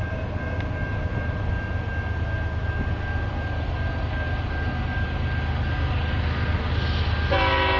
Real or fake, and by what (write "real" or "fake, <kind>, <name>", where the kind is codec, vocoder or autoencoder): real